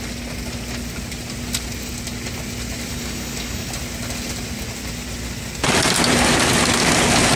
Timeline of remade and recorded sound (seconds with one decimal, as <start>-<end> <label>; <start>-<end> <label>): 0.0-2.9 recorded; 2.9-3.7 remade; 3.7-7.4 recorded